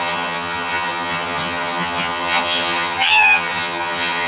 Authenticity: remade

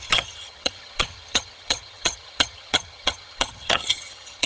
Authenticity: remade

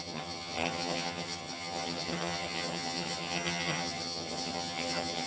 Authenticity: remade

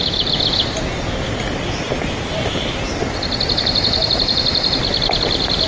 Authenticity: recorded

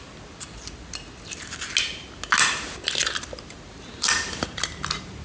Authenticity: recorded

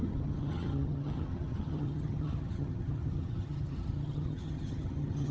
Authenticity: remade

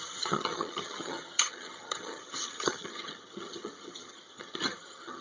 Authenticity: remade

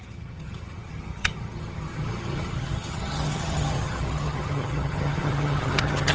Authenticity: remade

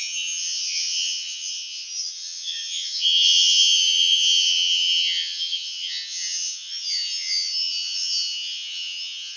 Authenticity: remade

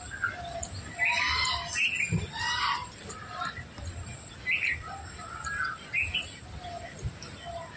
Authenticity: recorded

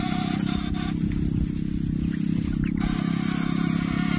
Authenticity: recorded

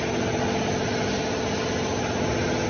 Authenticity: recorded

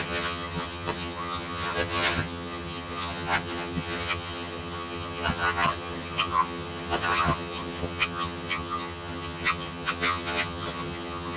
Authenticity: remade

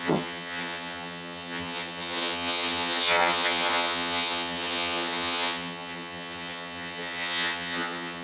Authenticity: remade